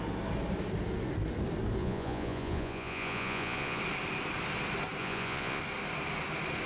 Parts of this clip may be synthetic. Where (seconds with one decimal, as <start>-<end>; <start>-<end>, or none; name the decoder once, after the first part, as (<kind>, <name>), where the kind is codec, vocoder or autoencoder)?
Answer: 1.8-3.8 (vocoder, Vocos); 5.0-5.6